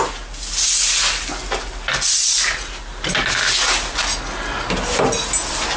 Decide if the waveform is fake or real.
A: real